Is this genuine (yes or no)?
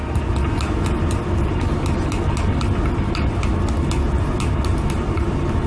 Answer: yes